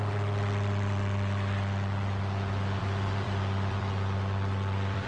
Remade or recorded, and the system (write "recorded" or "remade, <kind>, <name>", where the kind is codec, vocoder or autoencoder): remade, vocoder, BigVGAN v2